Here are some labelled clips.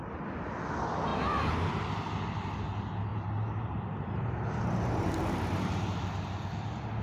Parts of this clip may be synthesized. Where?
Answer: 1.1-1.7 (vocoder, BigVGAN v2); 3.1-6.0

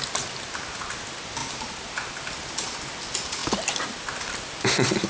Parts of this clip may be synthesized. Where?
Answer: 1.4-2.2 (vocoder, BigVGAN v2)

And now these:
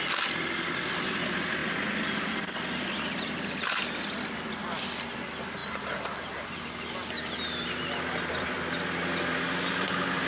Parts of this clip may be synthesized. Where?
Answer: 0.0-1.6 (vocoder, BigVGAN v2); 2.2-10.3

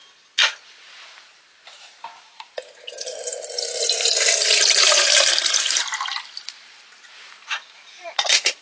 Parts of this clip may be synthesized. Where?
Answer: 0.8-8.6 (vocoder, BigVGAN v2)